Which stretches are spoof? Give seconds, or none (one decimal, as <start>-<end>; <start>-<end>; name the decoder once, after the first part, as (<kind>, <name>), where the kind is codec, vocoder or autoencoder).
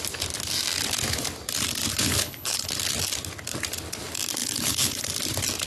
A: 1.9-2.7 (codec, HILCodec); 4.4-5.1